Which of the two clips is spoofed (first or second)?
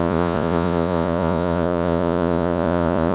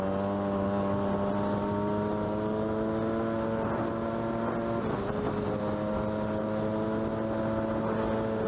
first